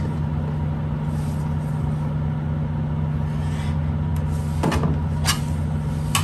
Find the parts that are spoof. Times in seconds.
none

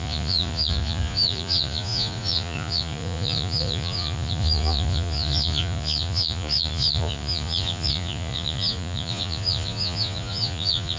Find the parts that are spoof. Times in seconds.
0.0-11.0 (vocoder, Vocos)

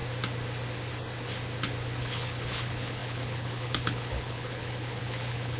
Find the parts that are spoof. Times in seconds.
2.0-5.6 (codec, HILCodec)

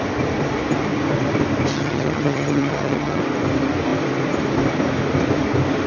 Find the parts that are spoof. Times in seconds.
1.7-3.2 (vocoder, HiFi-GAN)

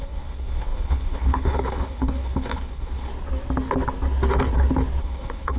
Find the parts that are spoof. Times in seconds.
0.0-3.1 (codec, HILCodec); 5.0-5.6